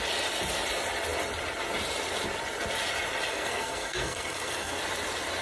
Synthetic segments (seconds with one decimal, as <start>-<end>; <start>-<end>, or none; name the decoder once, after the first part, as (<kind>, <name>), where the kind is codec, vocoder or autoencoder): 3.3-4.8 (codec, SNAC)